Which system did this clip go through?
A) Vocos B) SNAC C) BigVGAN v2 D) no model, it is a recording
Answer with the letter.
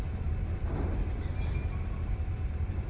D